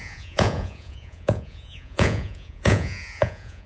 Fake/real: fake